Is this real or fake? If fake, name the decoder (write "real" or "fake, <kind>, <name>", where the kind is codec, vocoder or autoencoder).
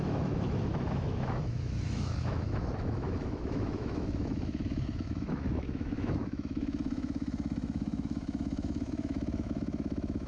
fake, autoencoder, DAC-VAE